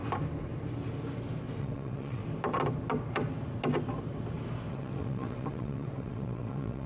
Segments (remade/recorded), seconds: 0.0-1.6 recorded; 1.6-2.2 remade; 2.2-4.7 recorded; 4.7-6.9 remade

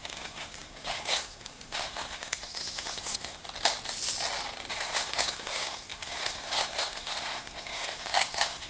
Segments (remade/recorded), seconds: 0.0-3.4 remade; 3.4-4.7 recorded; 4.7-8.7 remade

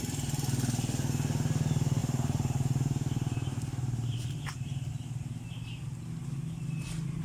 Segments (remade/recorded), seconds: 0.0-2.0 recorded; 2.0-4.9 remade; 4.9-7.2 recorded

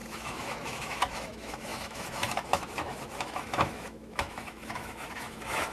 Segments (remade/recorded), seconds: 0.0-5.7 remade